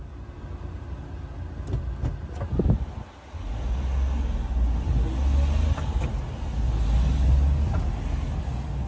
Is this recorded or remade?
recorded